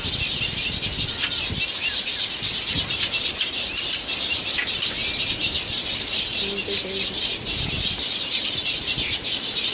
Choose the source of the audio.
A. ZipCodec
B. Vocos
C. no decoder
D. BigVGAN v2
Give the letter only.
C